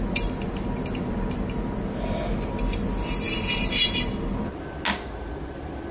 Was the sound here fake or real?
real